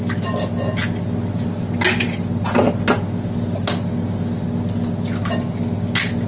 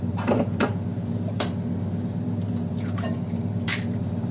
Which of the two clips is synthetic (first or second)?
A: second